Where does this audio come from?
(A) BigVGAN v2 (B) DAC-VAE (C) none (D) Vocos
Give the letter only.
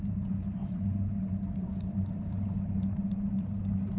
A